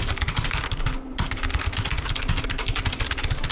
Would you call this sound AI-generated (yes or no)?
no